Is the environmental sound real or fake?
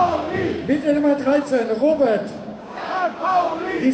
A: fake